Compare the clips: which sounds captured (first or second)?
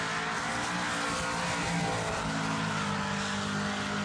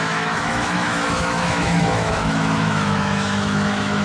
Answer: first